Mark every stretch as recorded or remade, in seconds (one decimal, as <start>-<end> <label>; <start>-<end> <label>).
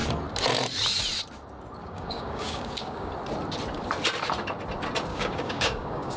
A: 0.0-1.8 recorded; 1.8-3.1 remade; 3.1-5.1 recorded; 5.1-6.2 remade